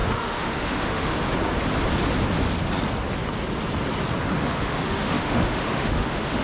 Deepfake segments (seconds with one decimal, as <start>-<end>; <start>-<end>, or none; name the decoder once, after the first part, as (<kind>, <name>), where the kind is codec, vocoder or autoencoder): 0.0-1.1 (autoencoder, DAC-VAE); 4.4-6.4